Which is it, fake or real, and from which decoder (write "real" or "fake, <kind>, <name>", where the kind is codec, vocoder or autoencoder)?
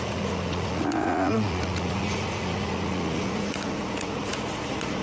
fake, vocoder, Vocos